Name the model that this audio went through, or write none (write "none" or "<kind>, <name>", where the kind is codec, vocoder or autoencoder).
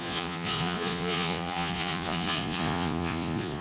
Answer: vocoder, Vocos